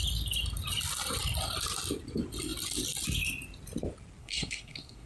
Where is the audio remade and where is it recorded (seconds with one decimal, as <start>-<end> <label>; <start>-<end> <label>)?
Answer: 0.0-4.2 recorded; 4.2-5.1 remade

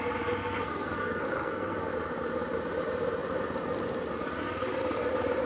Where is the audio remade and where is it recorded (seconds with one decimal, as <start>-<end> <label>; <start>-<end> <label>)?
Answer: 0.0-0.4 recorded; 0.4-1.9 remade; 1.9-5.5 recorded

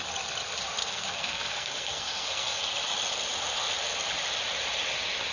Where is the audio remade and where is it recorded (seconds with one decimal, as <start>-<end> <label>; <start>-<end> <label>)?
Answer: 0.0-0.8 recorded; 0.8-2.6 remade; 2.6-5.3 recorded

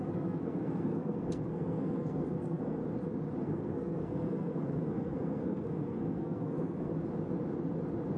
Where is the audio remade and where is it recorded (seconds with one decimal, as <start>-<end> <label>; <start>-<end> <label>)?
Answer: 0.0-2.8 remade; 2.8-3.4 recorded; 3.4-6.9 remade; 6.9-8.2 recorded

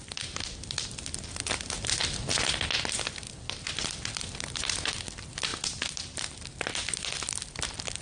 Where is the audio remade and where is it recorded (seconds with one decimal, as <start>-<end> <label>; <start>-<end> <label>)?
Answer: 0.0-8.0 recorded